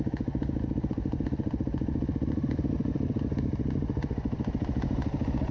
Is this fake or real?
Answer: real